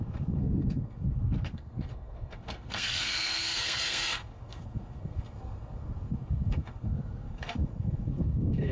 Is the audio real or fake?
fake